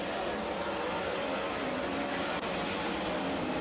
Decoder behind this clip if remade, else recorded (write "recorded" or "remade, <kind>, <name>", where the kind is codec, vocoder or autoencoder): recorded